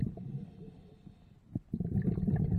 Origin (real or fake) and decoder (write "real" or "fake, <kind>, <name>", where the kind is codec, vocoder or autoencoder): real